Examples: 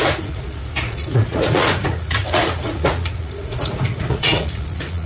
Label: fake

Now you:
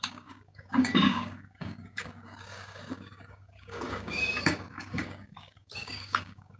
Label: fake